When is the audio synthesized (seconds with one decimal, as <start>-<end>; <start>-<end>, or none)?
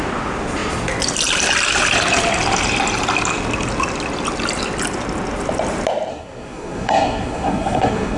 6.1-8.2